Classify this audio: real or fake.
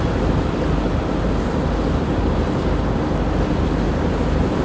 real